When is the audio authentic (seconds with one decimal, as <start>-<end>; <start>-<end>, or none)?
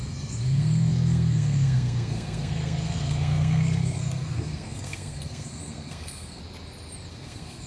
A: 6.4-7.1